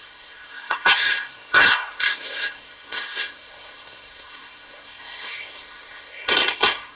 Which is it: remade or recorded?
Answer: remade